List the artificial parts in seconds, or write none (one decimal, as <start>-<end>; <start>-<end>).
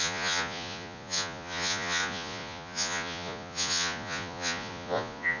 0.0-5.4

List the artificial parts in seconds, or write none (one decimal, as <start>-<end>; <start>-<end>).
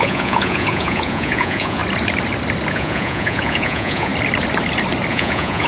0.0-1.8; 2.7-4.1; 5.1-5.7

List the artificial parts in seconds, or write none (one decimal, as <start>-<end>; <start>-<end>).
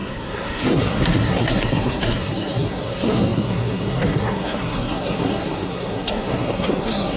0.0-7.2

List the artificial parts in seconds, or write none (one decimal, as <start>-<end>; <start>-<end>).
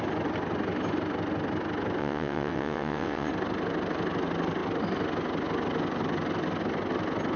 2.0-3.3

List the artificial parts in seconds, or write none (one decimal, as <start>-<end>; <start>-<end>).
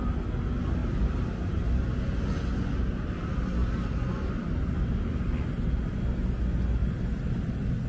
0.8-1.8; 3.6-4.7